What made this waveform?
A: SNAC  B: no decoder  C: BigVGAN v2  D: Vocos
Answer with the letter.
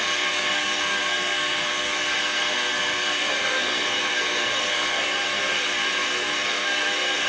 A